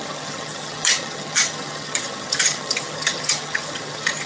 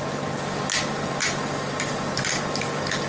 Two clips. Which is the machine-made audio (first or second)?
first